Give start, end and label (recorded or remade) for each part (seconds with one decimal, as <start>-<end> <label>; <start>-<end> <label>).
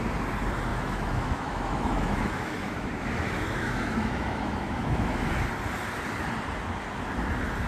0.0-0.7 recorded; 0.7-5.3 remade; 5.3-7.7 recorded